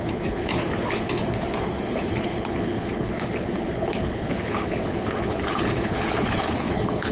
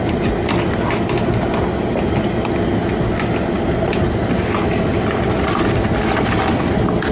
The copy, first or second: first